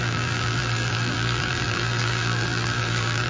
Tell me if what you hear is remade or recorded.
remade